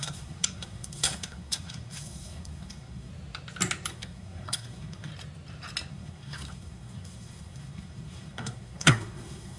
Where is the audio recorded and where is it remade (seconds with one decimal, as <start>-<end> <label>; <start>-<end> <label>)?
0.0-3.1 remade; 3.1-3.9 recorded; 3.9-5.1 remade; 5.1-5.9 recorded; 5.9-9.6 remade